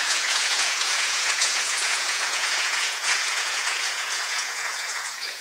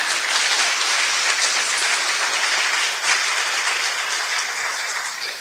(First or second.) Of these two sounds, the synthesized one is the first